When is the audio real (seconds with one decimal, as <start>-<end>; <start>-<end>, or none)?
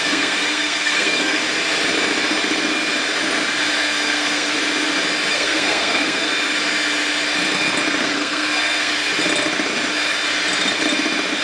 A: 1.4-3.8; 4.6-5.3; 6.3-8.0; 8.9-11.4